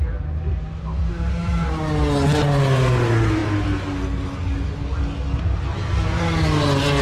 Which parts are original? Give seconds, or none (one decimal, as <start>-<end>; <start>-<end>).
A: 0.0-7.0